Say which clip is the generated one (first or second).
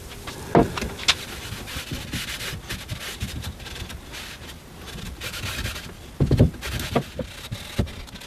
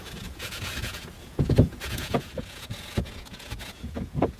second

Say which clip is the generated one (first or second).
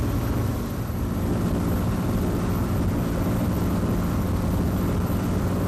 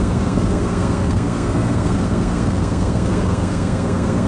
second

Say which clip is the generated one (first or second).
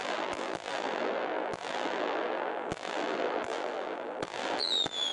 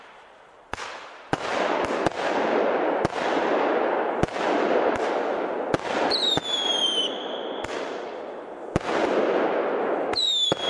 first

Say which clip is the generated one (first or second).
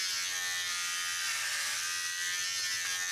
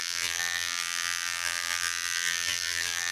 second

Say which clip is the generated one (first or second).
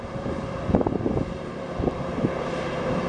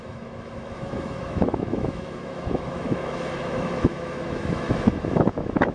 second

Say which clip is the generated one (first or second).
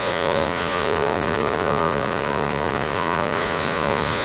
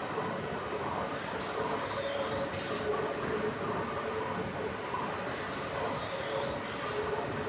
first